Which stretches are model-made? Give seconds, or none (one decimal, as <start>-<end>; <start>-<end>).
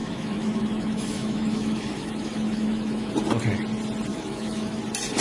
0.0-3.1; 4.1-4.8